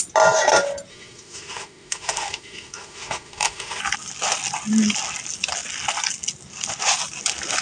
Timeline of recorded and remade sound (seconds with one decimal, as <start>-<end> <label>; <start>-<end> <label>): 0.0-0.9 recorded; 0.9-3.8 remade; 3.8-7.6 recorded

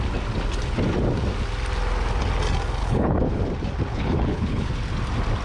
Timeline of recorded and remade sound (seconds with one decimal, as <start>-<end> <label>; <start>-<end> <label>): 0.0-2.8 recorded; 2.8-3.4 remade; 3.4-3.9 recorded; 3.9-4.7 remade; 4.7-5.4 recorded

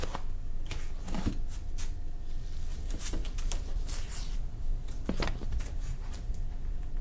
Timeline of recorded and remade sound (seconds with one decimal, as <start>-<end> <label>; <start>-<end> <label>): 0.0-2.7 recorded; 2.7-7.0 remade

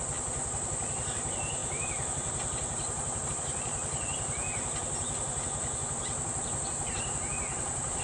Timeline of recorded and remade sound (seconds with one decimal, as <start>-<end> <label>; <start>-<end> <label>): 0.0-1.6 remade; 1.6-3.3 recorded; 3.3-4.4 remade; 4.4-6.9 recorded; 6.9-8.0 remade

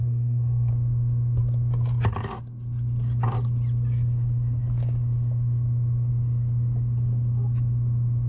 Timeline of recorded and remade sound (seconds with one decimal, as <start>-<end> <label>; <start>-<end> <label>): 0.0-0.7 remade; 0.7-8.3 recorded

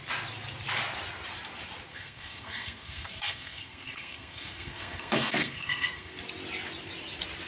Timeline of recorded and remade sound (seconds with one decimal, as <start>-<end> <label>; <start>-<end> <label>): 0.0-1.9 recorded; 1.9-6.2 remade; 6.2-7.5 recorded

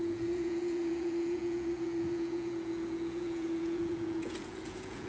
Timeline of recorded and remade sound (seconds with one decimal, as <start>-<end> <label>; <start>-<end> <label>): 0.0-5.1 remade

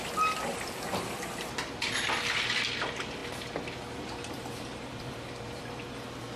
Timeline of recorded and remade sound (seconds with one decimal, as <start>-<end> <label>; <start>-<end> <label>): 0.0-3.2 remade; 3.2-4.0 recorded; 4.0-6.4 remade